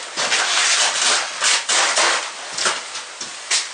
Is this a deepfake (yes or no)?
no